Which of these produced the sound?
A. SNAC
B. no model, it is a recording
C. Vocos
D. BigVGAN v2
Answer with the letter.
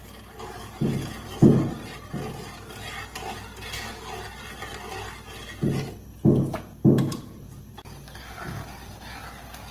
B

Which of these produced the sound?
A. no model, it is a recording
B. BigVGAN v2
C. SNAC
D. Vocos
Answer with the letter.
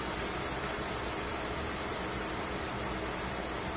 A